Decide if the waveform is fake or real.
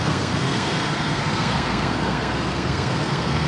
fake